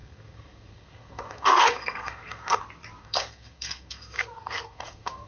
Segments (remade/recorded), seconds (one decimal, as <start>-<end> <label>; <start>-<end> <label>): 0.0-2.6 remade; 2.6-3.0 recorded; 3.0-5.3 remade